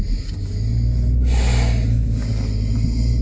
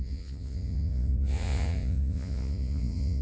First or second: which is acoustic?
first